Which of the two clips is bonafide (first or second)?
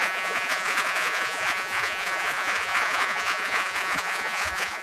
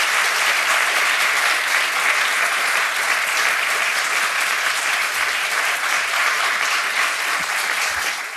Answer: second